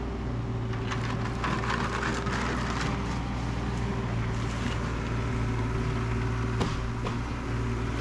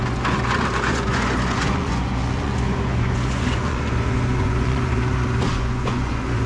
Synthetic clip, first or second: second